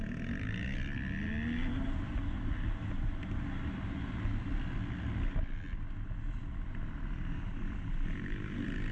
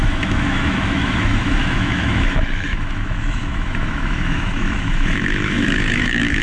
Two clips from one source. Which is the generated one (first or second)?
second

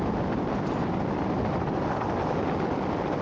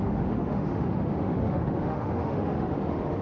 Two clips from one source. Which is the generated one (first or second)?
second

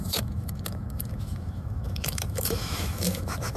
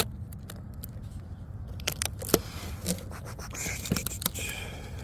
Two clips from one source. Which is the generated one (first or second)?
first